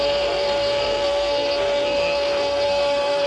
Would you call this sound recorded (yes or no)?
no